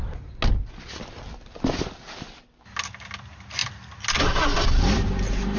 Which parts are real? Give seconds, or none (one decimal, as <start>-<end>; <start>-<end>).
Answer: 0.0-5.6